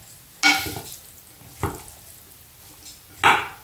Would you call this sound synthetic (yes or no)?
no